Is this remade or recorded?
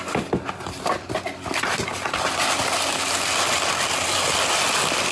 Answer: recorded